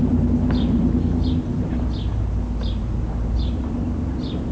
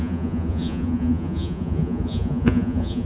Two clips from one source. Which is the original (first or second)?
first